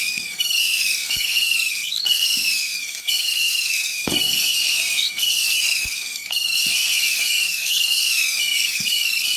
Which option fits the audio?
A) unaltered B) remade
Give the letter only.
B